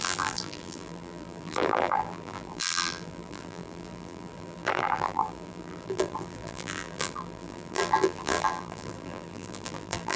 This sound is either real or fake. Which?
fake